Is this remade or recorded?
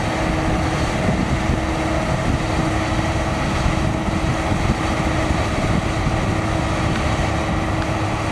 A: recorded